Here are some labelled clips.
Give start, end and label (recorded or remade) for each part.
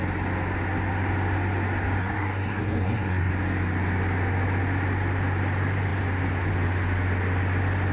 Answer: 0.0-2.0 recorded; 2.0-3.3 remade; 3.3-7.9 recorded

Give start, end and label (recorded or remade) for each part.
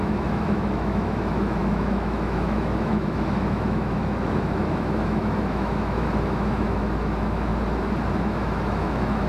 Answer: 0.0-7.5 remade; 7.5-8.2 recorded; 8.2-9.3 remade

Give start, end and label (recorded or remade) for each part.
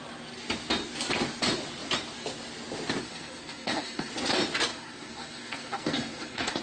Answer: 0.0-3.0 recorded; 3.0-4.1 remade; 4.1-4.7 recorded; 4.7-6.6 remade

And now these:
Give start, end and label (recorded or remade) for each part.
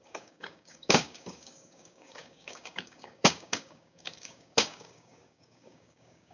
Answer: 0.0-6.3 remade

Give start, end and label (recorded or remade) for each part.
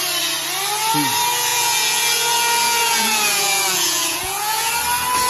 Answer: 0.0-1.5 recorded; 1.5-4.7 remade; 4.7-5.3 recorded